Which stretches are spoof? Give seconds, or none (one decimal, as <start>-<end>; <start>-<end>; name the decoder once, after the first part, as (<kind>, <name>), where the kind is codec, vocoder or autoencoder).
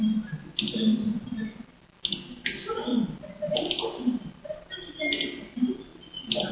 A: none